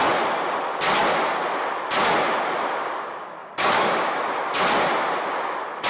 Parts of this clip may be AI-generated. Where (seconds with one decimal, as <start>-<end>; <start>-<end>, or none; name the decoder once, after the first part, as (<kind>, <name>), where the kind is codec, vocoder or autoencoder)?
3.4-4.2 (codec, DAC)